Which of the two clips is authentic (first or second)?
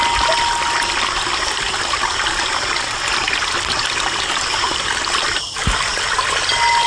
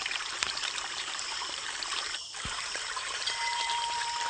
first